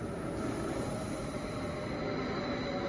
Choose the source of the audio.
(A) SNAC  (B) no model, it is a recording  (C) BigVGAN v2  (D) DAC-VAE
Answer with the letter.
B